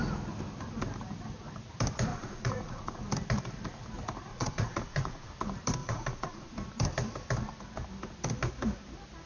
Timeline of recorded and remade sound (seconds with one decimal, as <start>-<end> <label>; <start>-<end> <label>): 0.0-2.1 recorded; 2.1-3.0 remade; 3.0-4.3 recorded; 4.3-5.3 remade; 5.3-5.8 recorded; 5.8-6.5 remade; 6.5-9.3 recorded